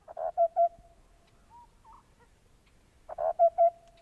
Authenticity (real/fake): real